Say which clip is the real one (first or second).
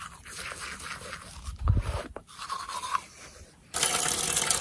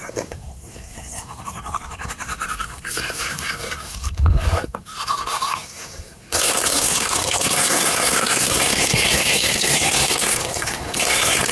first